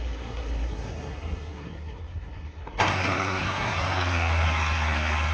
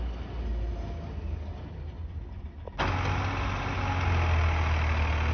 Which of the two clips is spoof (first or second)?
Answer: first